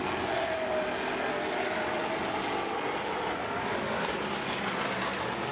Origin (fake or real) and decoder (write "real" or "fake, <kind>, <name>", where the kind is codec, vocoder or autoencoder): real